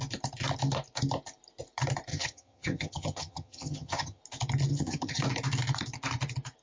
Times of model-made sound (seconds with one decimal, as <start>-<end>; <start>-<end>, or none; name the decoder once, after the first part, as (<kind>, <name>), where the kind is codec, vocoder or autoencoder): 2.1-4.2 (vocoder, HiFi-GAN); 4.7-5.2